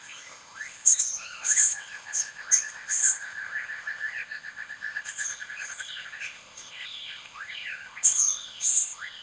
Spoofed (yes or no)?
yes